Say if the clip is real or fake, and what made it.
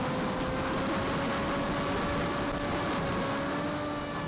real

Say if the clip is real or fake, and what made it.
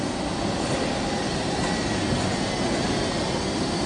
real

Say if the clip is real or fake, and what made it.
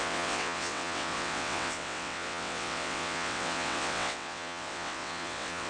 fake, vocoder, WaveNeXt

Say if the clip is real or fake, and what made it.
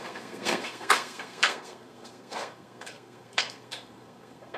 fake, codec, SNAC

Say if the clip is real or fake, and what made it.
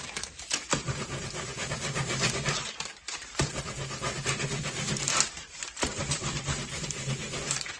fake, vocoder, BigVGAN v2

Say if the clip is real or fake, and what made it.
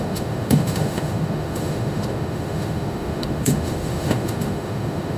fake, autoencoder, DAC-VAE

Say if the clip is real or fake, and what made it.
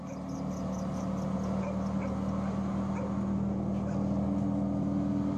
real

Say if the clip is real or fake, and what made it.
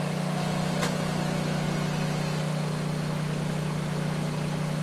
real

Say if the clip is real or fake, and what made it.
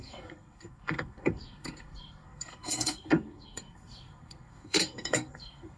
fake, codec, SNAC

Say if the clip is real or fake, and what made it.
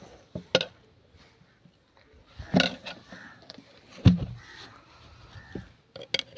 real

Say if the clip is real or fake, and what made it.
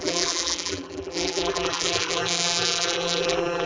fake, vocoder, BigVGAN v2